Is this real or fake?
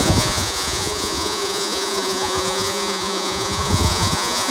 fake